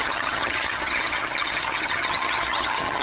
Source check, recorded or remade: remade